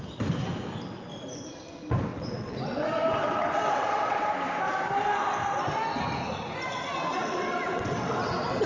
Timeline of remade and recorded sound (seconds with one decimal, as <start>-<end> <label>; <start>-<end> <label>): 0.0-2.1 recorded; 2.1-4.3 remade; 4.3-7.2 recorded; 7.2-8.7 remade